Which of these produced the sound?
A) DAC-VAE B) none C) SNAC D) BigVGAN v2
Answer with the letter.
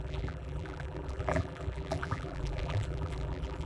D